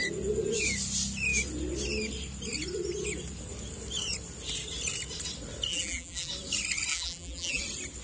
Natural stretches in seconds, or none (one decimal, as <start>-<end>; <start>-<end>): 0.0-5.7; 6.3-6.9; 7.6-8.0